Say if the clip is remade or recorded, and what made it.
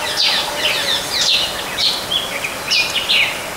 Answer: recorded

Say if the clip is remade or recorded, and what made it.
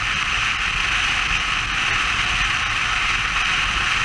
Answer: recorded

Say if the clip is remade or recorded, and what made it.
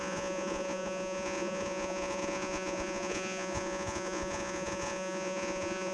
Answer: remade, vocoder, Vocos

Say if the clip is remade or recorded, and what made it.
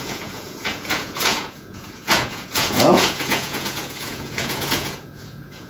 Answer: remade, vocoder, Vocos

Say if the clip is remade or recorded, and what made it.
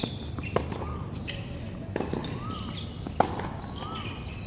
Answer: recorded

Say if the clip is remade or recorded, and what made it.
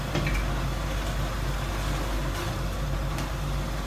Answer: recorded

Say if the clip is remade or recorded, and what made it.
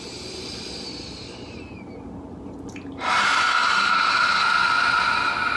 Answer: recorded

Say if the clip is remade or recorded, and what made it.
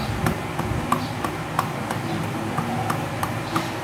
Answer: recorded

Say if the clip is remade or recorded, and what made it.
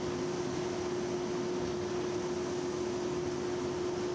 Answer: recorded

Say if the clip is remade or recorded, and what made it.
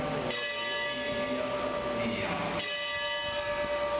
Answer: recorded